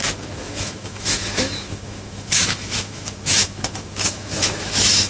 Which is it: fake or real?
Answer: fake